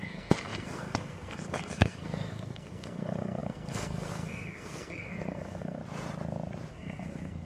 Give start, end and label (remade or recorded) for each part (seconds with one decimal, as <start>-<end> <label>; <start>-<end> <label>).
0.0-5.8 remade; 5.8-6.7 recorded; 6.7-7.4 remade